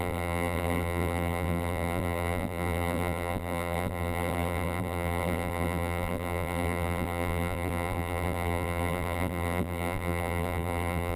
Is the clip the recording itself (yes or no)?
no